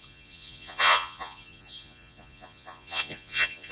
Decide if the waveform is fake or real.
fake